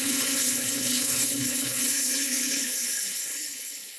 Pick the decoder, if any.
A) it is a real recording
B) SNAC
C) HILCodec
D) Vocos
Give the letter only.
C